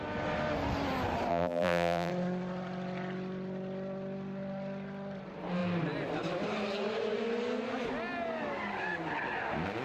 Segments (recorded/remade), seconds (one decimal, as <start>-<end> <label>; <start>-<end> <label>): 0.0-1.3 recorded; 1.3-2.1 remade; 2.1-9.8 recorded

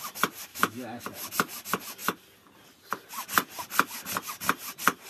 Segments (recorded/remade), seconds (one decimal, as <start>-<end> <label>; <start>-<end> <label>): 0.0-0.5 recorded; 0.5-1.0 remade; 1.0-5.1 recorded

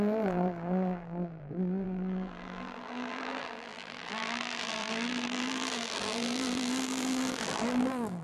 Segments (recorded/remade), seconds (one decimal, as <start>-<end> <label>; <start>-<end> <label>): 0.0-8.2 remade

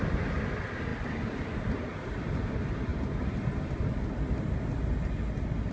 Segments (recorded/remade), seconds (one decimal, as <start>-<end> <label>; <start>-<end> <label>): 0.0-0.9 recorded; 0.9-2.2 remade; 2.2-5.7 recorded